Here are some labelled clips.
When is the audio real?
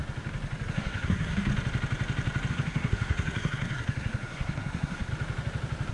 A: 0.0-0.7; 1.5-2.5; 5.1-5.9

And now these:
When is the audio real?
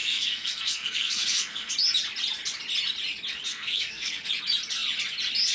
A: 1.7-3.5; 4.3-5.5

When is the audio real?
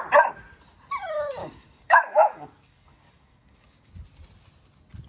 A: 0.0-1.4; 3.9-5.1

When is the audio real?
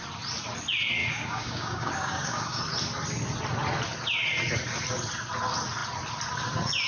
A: 0.0-1.0; 2.6-6.9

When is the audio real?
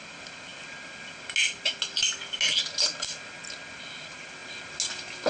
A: 0.0-5.3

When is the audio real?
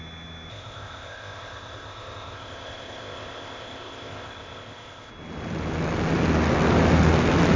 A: 0.0-0.5; 5.1-7.6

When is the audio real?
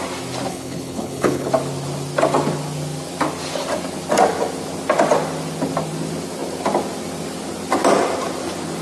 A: 0.0-0.5; 1.5-8.8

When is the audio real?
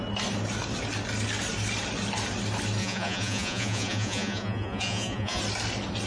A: 0.0-2.8; 5.4-6.1